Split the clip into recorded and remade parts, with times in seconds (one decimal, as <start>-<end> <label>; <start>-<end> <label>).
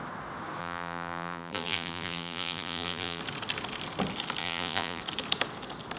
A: 0.0-0.6 recorded; 0.6-3.2 remade; 3.2-4.4 recorded; 4.4-5.0 remade; 5.0-6.0 recorded